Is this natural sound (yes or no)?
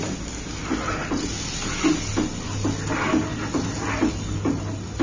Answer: yes